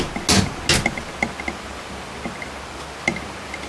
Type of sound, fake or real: real